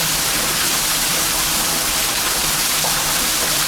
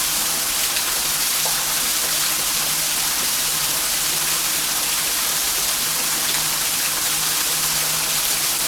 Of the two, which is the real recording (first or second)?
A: second